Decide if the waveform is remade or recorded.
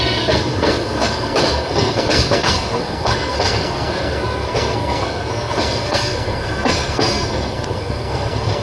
remade